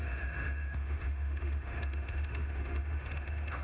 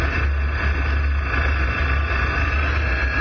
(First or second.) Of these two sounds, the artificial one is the first